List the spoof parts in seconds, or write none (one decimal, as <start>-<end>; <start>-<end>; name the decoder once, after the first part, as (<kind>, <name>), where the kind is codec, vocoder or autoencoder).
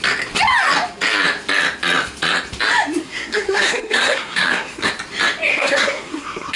3.0-4.9 (codec, SNAC); 5.5-6.6